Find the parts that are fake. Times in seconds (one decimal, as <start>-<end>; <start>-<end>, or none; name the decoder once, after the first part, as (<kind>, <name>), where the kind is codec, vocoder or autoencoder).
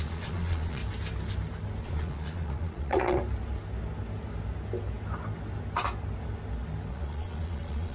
0.0-0.8 (vocoder, Vocos); 1.8-3.2; 6.9-7.9